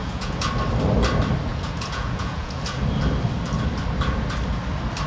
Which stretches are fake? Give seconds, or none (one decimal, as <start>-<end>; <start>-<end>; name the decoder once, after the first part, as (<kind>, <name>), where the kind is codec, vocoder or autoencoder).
0.0-0.5 (vocoder, Vocos); 1.5-2.8